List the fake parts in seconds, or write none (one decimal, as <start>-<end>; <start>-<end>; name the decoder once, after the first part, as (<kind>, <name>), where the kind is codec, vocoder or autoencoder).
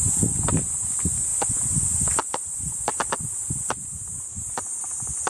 0.0-5.3 (vocoder, BigVGAN v2)